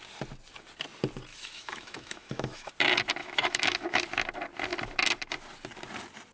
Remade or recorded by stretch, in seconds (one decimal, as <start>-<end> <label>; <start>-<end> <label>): 0.0-1.3 recorded; 1.3-2.7 remade; 2.7-3.2 recorded; 3.2-4.0 remade; 4.0-6.3 recorded